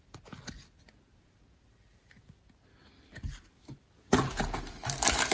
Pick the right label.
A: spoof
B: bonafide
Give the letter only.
B